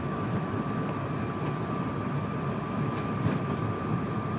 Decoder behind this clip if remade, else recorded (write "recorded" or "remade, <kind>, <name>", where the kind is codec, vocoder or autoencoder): remade, vocoder, BigVGAN v2